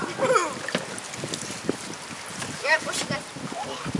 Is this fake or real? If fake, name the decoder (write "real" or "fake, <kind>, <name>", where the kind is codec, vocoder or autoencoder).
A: real